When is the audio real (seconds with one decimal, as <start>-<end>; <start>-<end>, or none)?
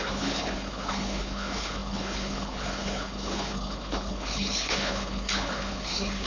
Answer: none